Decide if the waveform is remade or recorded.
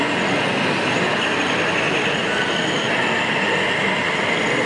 recorded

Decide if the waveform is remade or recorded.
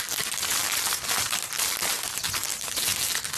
recorded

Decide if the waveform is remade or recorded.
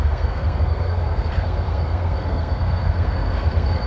remade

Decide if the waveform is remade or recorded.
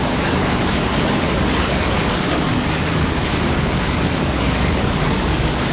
remade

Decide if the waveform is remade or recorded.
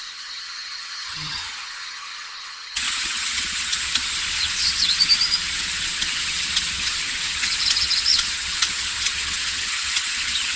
remade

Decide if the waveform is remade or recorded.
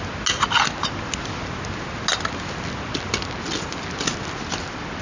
recorded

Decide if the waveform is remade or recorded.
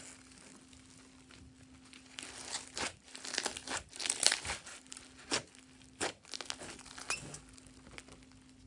recorded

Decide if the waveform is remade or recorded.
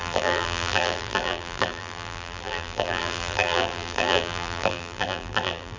remade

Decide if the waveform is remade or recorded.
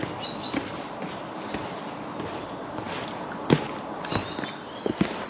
recorded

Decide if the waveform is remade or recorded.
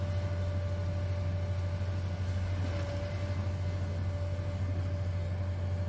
recorded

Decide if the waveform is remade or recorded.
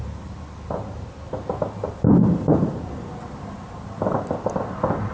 recorded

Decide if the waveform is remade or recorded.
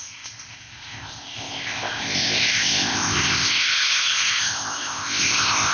remade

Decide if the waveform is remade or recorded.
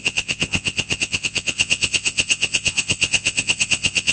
remade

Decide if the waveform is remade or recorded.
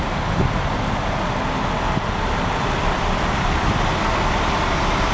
recorded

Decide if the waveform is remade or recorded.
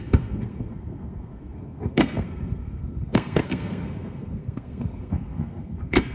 remade